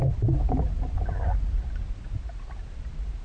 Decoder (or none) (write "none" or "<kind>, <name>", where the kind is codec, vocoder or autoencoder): none